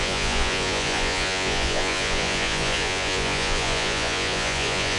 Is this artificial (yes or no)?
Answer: yes